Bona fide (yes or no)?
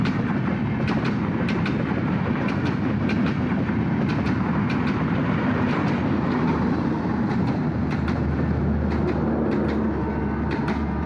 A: yes